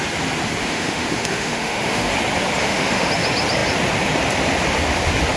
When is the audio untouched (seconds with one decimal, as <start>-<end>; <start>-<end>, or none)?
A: 0.0-0.6; 2.1-2.6; 3.1-5.4